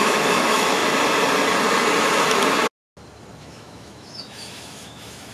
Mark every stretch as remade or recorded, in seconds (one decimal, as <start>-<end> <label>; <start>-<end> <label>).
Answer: 0.0-0.8 remade; 0.8-3.4 recorded; 3.4-5.3 remade